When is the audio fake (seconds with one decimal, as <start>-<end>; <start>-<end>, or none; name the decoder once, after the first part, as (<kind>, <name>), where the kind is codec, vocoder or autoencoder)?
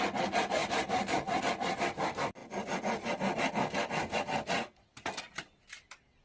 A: 0.6-1.4 (vocoder, BigVGAN v2)